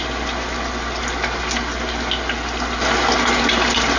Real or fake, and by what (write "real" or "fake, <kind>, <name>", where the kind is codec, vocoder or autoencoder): real